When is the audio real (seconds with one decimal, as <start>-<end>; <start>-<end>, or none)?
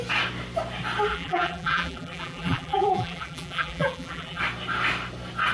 0.0-1.1; 4.4-5.5